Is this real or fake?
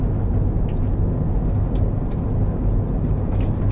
real